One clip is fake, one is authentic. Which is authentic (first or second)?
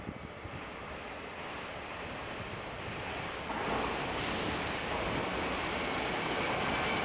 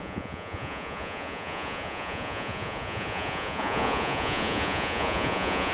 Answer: first